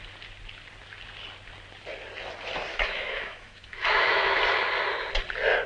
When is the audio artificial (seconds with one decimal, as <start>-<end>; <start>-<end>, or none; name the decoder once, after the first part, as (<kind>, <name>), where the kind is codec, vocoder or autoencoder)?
2.7-4.4 (autoencoder, DAC-VAE)